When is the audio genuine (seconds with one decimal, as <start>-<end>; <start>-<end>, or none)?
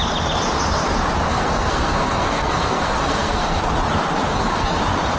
0.0-1.3; 3.6-4.3; 4.8-5.2